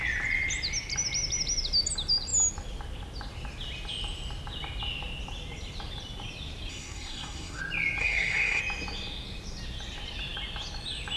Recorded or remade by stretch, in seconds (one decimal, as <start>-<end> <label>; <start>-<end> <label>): 0.0-6.7 recorded; 6.7-7.6 remade; 7.6-8.0 recorded; 8.0-8.6 remade; 8.6-11.2 recorded